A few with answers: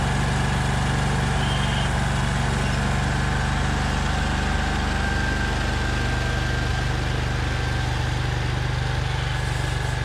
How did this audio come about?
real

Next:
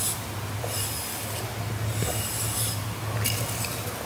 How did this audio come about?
real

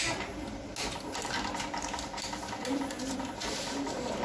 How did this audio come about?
real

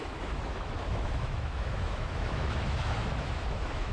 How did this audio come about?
fake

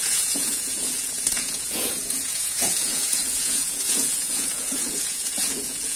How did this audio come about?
fake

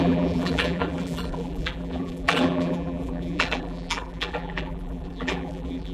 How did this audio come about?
fake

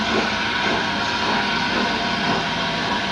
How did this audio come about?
real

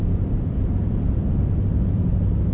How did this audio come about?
real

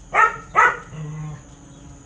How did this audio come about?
real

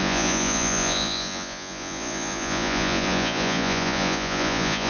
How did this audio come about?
fake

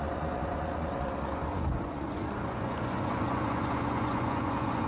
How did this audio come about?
fake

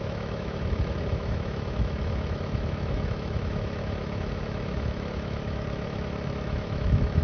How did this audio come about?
fake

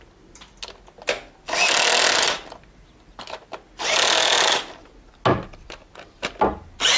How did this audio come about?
real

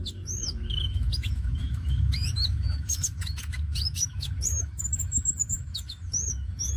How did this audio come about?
fake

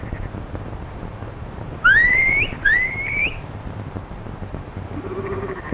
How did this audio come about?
fake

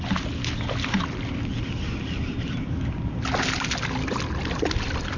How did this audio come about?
real